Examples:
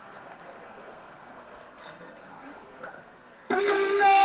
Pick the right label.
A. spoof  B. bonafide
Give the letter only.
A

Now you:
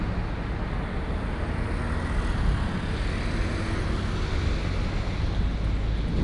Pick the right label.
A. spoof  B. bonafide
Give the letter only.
B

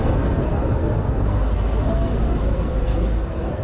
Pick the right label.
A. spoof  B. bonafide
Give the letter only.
A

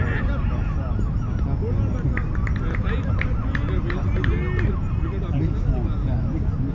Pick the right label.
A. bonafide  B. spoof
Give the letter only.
A